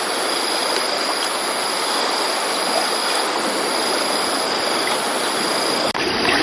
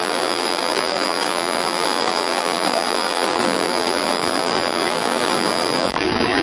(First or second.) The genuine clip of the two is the first